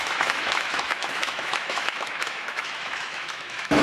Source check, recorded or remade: remade